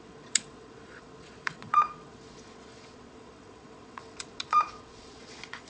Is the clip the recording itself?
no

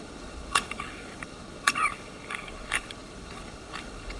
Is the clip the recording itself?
no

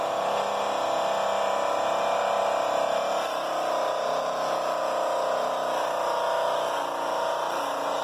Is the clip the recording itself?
yes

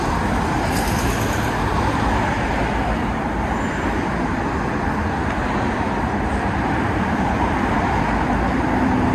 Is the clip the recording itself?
yes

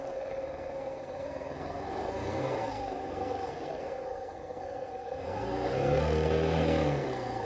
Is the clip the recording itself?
no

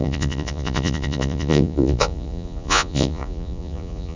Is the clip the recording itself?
no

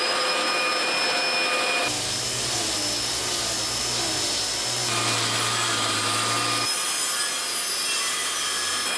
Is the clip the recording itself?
yes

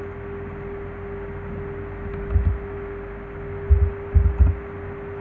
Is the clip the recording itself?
yes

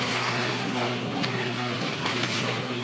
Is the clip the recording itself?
no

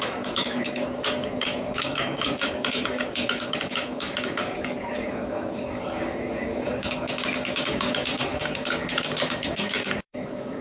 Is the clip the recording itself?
no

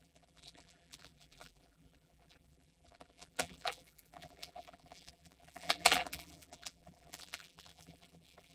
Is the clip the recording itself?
no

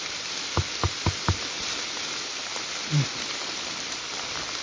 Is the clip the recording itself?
yes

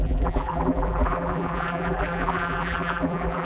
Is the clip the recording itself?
no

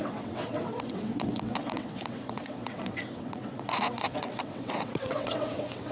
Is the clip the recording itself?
no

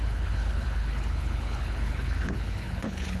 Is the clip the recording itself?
no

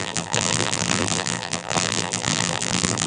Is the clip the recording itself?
no